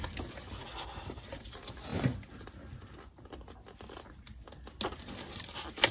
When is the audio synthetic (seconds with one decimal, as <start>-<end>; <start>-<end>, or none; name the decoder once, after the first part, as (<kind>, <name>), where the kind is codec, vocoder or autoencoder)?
none